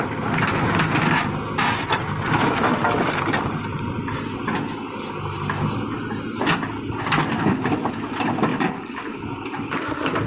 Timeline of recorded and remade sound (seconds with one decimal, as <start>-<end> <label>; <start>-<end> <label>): 0.0-10.3 recorded

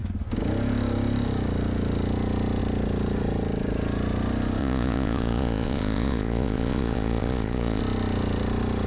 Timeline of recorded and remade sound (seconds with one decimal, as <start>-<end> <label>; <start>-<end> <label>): 0.0-4.6 recorded; 4.6-7.8 remade; 7.8-8.9 recorded